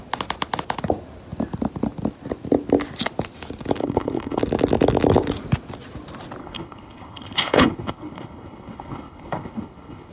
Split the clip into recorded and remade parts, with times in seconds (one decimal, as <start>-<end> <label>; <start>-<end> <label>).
0.0-3.8 recorded; 3.8-4.4 remade; 4.4-6.4 recorded; 6.4-10.1 remade